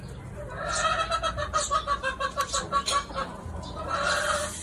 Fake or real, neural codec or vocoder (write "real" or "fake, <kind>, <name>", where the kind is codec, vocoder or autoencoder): real